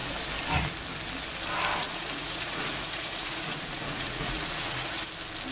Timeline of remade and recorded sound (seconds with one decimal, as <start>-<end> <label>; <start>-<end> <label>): 0.0-1.8 recorded; 1.8-5.1 remade; 5.1-5.5 recorded